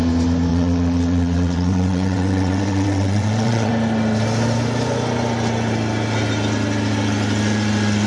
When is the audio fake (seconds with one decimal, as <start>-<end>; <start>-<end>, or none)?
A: 0.5-3.7